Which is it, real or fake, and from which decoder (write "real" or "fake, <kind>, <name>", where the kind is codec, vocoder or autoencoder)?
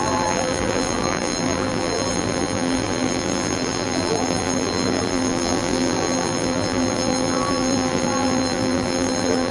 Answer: fake, vocoder, BigVGAN v2